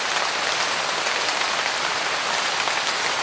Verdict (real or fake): real